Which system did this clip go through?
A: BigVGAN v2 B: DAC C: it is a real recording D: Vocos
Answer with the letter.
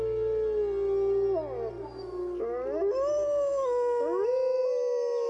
C